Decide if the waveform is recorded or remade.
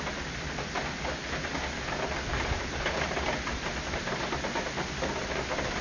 recorded